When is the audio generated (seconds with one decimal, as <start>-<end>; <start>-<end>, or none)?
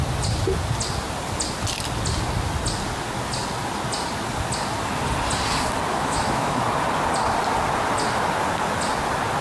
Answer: 5.9-6.6